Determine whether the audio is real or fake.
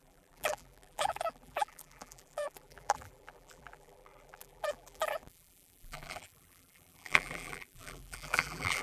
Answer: fake